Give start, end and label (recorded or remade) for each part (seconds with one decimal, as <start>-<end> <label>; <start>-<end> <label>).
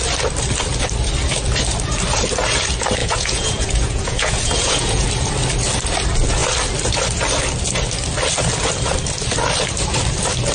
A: 0.0-3.0 recorded; 3.0-5.1 remade; 5.1-10.5 recorded